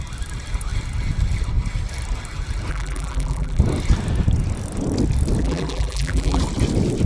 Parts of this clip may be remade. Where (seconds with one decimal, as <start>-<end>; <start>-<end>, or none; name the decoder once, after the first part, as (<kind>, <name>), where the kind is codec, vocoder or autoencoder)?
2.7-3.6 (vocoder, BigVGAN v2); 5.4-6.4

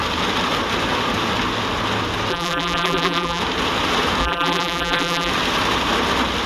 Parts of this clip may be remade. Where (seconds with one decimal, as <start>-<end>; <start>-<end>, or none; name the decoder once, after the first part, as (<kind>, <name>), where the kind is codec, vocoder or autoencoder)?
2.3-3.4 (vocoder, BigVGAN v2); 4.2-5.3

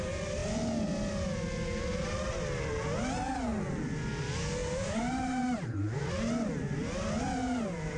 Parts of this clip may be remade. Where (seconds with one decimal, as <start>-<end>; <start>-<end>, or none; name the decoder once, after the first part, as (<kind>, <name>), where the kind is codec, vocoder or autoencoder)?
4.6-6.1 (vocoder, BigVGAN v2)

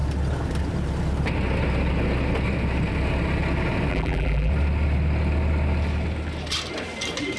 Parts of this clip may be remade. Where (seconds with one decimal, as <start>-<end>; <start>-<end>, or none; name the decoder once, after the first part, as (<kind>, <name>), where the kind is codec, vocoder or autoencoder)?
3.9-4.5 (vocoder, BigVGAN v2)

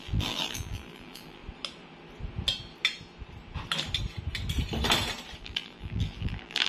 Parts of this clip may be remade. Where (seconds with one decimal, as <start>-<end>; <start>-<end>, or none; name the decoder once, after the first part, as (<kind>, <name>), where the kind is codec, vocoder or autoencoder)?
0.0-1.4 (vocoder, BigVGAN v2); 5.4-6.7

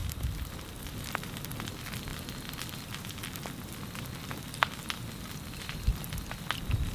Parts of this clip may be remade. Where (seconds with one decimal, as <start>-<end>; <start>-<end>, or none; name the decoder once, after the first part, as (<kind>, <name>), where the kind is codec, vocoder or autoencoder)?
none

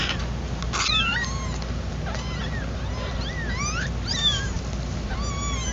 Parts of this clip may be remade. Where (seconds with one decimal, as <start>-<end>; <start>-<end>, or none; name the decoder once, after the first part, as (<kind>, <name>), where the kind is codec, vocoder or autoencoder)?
1.1-1.9 (vocoder, BigVGAN v2); 4.1-5.1